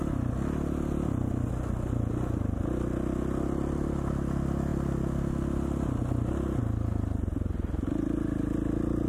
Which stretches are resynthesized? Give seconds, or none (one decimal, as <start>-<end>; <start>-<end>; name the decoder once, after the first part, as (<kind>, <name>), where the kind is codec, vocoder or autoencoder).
none